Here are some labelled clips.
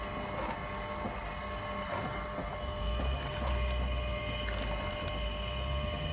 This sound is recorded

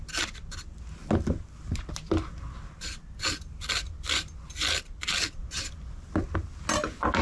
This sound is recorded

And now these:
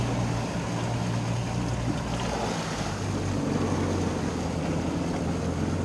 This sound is recorded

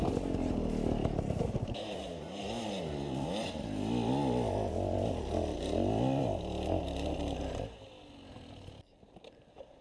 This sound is recorded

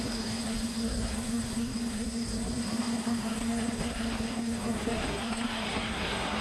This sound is remade